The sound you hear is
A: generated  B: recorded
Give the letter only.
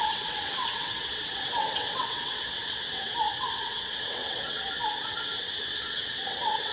A